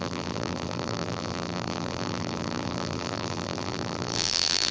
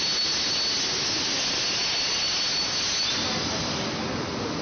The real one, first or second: second